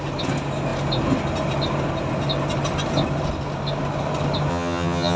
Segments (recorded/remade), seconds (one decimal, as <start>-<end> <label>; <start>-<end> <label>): 0.0-4.5 recorded; 4.5-5.2 remade